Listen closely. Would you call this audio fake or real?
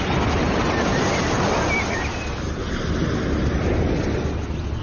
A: real